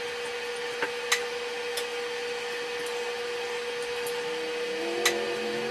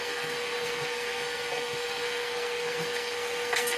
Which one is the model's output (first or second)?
second